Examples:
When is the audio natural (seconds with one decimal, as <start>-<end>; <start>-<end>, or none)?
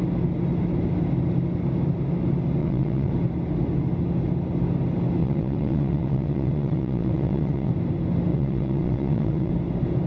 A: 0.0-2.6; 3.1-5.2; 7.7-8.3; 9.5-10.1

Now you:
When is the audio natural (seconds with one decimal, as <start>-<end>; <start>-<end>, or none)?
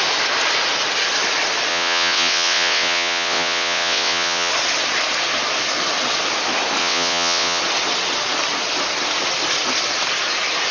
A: 0.0-1.7; 4.5-6.8; 7.6-10.7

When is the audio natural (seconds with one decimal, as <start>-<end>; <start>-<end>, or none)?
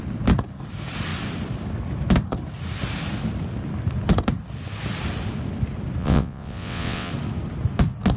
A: 0.0-6.0; 7.1-8.2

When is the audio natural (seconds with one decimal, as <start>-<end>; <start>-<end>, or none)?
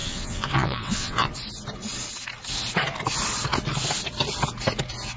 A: 1.3-5.2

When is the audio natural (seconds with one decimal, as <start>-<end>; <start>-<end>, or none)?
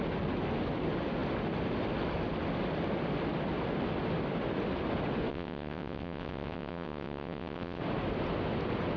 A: 0.0-5.3; 7.8-9.0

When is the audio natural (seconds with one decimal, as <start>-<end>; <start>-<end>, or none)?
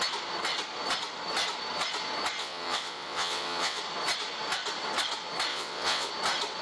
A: 0.0-2.4; 3.8-5.5; 6.1-6.6